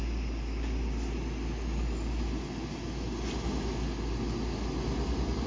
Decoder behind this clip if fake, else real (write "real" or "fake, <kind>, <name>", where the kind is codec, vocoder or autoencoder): real